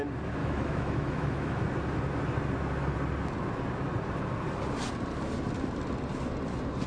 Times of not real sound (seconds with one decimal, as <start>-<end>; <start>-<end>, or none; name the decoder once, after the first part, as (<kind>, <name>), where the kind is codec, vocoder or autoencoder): 0.4-1.6 (autoencoder, DAC-VAE)